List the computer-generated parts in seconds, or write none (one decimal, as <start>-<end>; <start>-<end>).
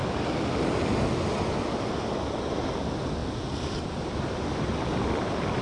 none